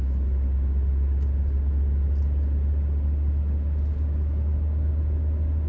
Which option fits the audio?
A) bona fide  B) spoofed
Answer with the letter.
A